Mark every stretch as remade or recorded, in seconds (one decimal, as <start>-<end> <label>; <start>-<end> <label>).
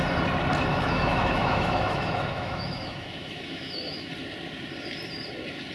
0.0-0.7 recorded; 0.7-4.1 remade; 4.1-5.7 recorded